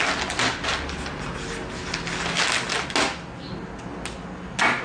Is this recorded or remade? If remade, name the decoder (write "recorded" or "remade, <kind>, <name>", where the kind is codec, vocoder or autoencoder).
recorded